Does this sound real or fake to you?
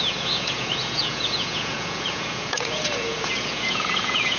fake